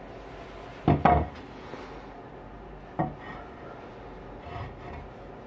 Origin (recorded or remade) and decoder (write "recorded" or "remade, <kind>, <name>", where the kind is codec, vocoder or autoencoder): recorded